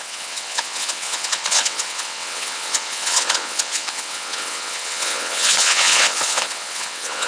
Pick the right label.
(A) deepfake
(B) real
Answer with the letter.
A